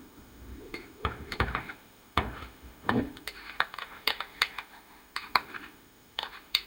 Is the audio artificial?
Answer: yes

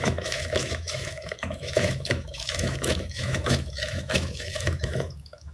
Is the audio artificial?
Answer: yes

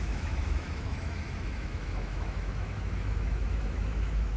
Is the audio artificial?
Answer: yes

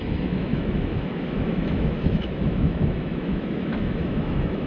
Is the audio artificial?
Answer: yes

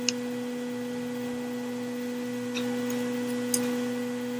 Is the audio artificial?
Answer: no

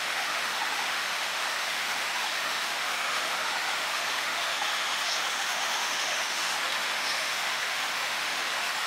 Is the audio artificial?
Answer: yes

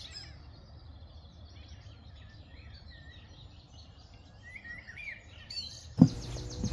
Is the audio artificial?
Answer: no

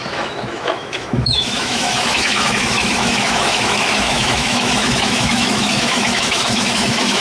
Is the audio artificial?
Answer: yes